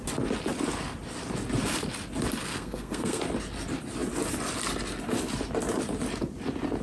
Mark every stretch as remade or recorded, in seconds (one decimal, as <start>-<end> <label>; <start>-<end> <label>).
0.0-2.4 recorded; 2.4-3.2 remade; 3.2-6.8 recorded